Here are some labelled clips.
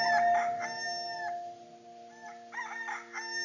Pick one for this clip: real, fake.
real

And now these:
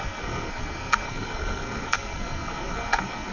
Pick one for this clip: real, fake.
fake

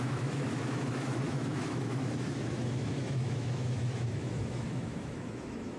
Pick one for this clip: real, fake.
fake